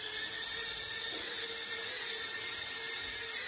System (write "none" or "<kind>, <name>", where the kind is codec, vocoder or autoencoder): none